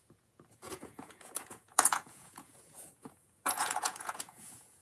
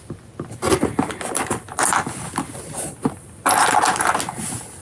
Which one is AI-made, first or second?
first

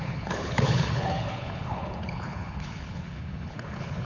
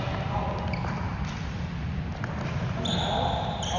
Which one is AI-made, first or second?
first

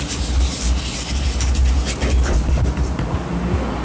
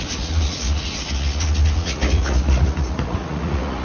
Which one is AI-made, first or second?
second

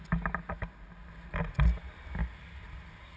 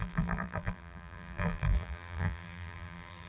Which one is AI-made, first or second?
second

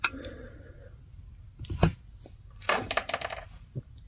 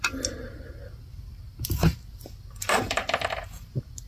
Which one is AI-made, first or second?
first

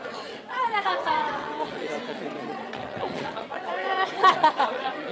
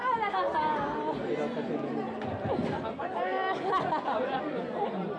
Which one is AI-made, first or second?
first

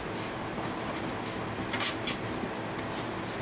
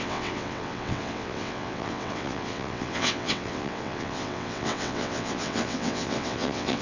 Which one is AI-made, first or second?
second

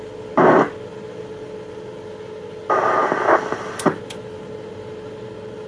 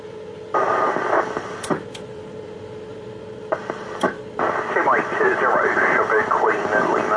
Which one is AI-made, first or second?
second